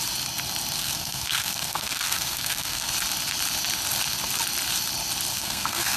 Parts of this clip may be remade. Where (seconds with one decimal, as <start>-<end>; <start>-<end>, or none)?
0.8-2.9; 5.3-6.0